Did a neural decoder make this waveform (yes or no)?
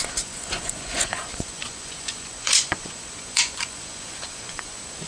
yes